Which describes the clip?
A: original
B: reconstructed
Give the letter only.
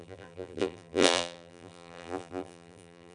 B